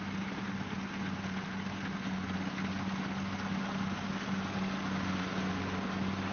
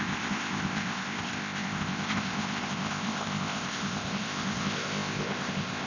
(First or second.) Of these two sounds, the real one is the first